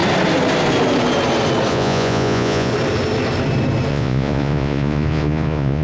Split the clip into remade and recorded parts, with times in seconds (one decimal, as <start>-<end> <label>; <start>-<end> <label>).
0.0-1.7 recorded; 1.7-2.7 remade; 2.7-3.9 recorded; 3.9-5.8 remade